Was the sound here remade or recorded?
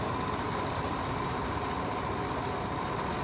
recorded